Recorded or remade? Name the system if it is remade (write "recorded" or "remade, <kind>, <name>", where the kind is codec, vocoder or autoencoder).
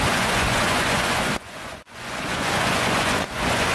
remade, vocoder, Vocos